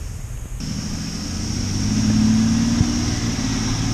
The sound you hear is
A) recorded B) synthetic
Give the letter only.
A